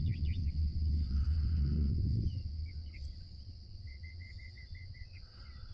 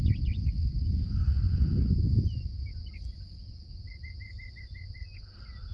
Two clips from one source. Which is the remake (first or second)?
first